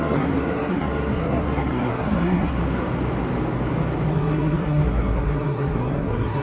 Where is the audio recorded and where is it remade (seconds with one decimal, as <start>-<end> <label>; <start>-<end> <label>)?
0.0-2.6 remade; 2.6-4.1 recorded; 4.1-6.4 remade